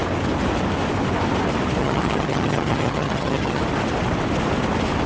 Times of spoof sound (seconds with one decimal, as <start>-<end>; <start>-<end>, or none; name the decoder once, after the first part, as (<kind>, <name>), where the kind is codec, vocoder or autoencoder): 1.8-3.6 (vocoder, HiFi-GAN)